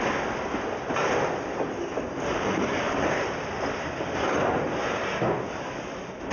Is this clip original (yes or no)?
yes